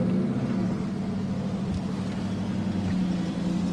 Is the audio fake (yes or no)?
no